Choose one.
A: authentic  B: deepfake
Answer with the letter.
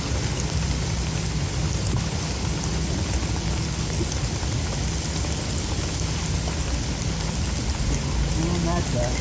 A